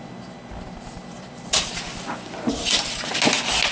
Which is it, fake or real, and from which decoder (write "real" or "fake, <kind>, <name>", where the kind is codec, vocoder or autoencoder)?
real